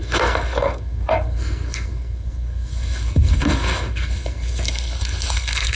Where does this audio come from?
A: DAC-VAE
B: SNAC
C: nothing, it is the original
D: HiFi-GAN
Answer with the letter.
B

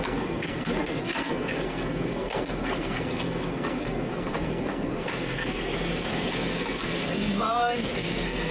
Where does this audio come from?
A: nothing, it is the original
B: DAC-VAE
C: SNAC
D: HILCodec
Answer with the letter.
C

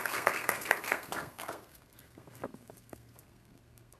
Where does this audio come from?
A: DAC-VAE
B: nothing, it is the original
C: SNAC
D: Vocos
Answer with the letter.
C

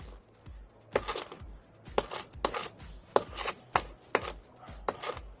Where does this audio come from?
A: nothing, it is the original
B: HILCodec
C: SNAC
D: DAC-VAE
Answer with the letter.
A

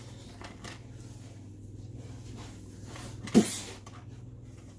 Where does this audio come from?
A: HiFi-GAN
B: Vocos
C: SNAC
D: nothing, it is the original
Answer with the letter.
D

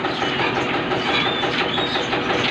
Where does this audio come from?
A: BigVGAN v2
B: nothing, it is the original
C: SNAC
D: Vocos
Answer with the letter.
B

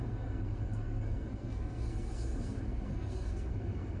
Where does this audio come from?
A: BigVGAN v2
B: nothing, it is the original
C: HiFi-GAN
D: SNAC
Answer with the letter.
D